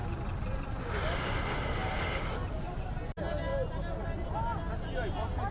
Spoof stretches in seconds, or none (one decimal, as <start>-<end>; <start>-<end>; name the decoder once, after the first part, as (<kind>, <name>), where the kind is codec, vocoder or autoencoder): 0.0-0.8 (vocoder, BigVGAN v2); 1.8-2.9